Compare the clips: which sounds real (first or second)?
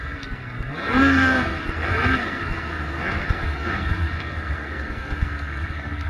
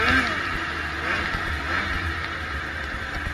second